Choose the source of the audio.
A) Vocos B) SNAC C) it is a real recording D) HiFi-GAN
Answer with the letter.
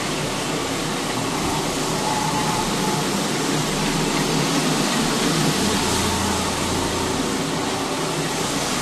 C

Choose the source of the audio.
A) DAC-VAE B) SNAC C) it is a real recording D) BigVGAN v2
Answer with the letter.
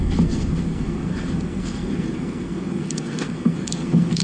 B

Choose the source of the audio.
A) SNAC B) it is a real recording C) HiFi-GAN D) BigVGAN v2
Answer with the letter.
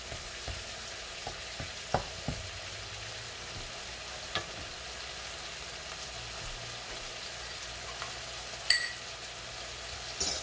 B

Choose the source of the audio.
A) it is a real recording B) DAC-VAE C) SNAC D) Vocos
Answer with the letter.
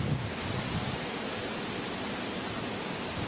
A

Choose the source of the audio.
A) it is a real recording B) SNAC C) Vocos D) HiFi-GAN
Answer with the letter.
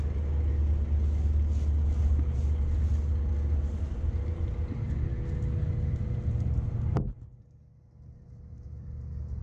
A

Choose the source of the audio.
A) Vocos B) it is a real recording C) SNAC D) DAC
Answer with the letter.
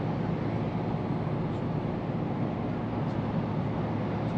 B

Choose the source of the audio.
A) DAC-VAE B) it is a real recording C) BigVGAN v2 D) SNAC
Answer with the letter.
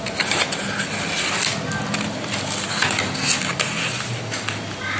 B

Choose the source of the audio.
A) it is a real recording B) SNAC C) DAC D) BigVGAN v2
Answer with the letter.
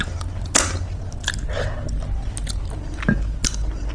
A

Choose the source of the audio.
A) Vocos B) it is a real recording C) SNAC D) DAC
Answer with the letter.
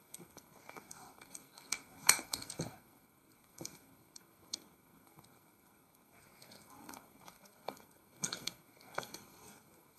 C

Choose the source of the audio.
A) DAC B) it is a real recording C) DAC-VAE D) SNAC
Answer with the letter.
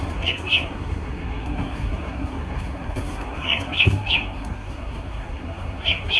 D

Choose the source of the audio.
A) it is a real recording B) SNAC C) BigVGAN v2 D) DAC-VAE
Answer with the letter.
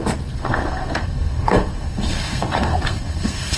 B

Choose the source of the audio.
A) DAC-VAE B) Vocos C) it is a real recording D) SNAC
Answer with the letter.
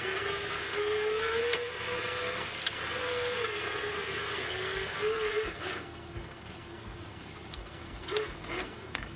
D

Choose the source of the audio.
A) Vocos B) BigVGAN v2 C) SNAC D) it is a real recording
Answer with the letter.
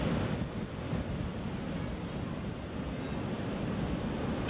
D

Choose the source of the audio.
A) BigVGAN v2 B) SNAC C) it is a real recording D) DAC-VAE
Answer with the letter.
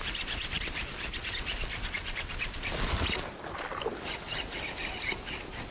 C